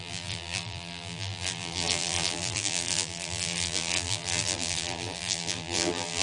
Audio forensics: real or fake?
fake